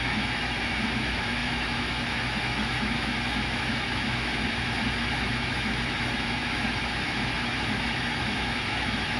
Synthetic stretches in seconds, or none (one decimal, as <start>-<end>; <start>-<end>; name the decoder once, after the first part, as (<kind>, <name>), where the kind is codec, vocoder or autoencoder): 0.0-9.2 (autoencoder, DAC-VAE)